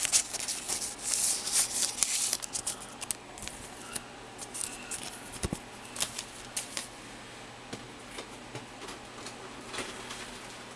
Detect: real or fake real